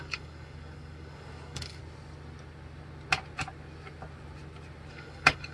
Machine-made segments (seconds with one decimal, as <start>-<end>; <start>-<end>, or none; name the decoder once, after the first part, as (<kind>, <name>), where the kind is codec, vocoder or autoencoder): 0.0-1.8 (codec, DAC); 4.9-5.5